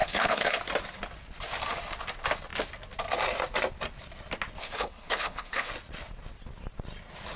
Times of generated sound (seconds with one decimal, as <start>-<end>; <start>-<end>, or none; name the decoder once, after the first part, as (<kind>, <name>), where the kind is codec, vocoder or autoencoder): 0.0-0.6 (codec, HILCodec); 4.6-5.7